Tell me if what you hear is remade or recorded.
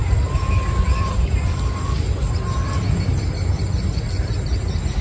recorded